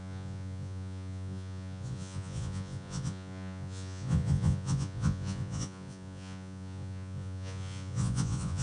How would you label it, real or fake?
fake